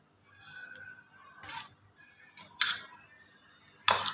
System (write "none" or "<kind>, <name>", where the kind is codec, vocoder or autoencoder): none